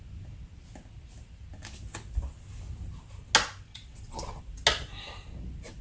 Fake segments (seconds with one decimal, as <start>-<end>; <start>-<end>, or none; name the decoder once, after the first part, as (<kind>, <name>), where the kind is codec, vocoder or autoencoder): 3.7-4.4 (vocoder, WaveNeXt)